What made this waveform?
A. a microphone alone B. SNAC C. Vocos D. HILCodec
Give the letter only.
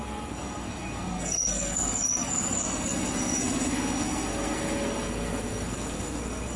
B